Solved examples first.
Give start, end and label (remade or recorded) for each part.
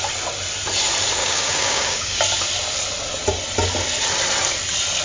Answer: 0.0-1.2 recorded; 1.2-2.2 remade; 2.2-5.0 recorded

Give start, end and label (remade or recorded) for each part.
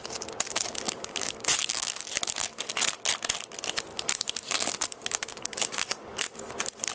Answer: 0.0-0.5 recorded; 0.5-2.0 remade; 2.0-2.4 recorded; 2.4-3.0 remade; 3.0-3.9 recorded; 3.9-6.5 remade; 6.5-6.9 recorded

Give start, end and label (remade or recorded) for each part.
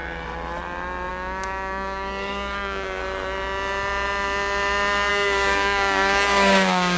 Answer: 0.0-1.1 recorded; 1.1-3.0 remade; 3.0-5.1 recorded; 5.1-7.0 remade